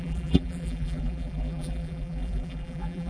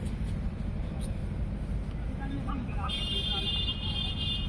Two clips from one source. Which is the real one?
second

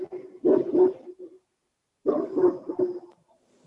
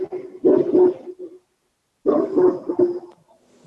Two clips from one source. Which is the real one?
second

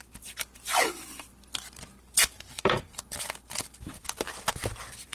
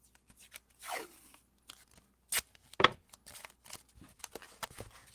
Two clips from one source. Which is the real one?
second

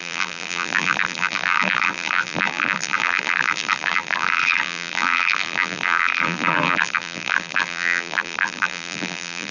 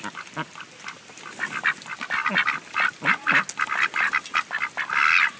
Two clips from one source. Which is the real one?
second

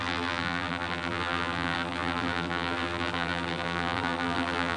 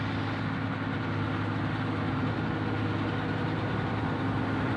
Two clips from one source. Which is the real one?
second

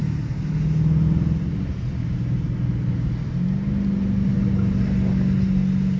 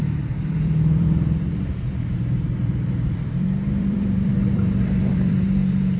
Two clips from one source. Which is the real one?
first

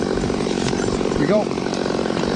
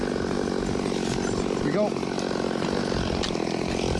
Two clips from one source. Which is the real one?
second